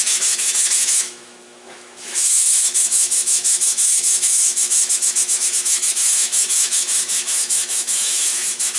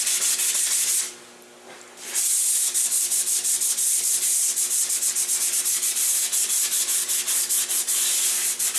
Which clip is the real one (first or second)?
second